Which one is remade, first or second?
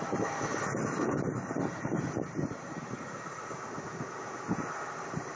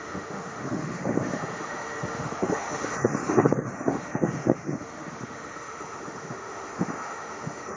second